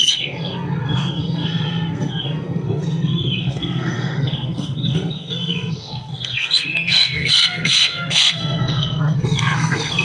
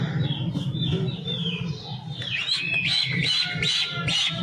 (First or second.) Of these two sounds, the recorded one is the second